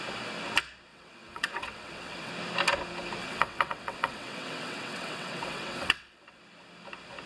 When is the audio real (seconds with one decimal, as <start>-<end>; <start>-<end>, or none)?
0.0-0.9; 2.3-3.2; 6.4-7.3